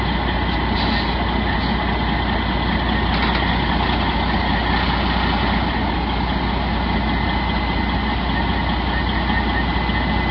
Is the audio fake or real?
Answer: real